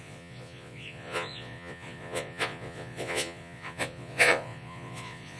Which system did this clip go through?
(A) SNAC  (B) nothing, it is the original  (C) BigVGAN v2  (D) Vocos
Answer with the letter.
D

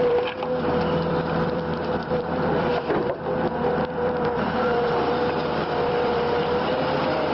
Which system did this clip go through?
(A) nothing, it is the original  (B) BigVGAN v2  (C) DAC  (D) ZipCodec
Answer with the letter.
B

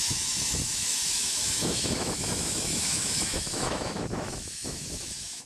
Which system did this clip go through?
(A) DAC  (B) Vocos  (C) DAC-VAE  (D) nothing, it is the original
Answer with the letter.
C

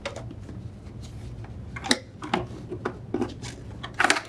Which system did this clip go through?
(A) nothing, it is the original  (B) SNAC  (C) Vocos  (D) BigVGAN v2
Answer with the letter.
A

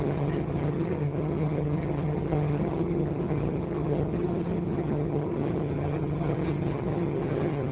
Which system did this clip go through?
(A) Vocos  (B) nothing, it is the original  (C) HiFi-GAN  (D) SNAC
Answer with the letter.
C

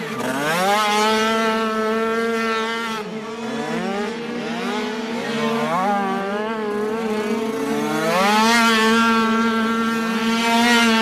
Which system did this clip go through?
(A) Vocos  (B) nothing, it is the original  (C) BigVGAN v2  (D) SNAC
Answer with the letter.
B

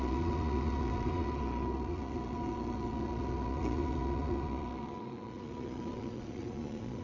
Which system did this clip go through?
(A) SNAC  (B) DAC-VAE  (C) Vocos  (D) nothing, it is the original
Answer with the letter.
C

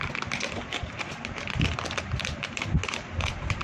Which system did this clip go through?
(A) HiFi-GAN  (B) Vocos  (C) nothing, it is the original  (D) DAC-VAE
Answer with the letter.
C